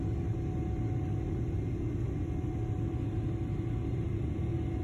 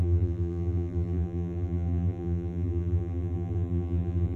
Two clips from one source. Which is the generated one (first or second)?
second